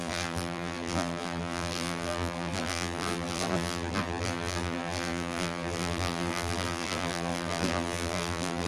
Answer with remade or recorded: remade